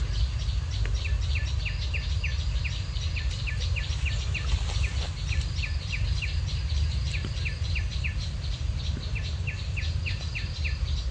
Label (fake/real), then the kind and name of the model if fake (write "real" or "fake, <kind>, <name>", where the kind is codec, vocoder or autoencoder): real